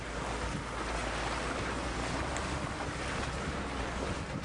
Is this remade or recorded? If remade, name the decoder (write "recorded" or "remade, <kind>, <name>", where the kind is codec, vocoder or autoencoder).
recorded